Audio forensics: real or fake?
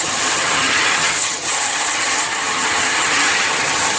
fake